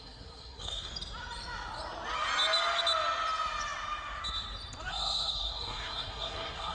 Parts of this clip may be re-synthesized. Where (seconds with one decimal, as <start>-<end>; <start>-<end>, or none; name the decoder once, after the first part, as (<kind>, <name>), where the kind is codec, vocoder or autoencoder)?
0.0-0.9 (codec, SNAC); 4.9-6.7